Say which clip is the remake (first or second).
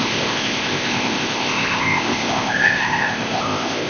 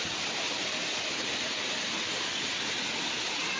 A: first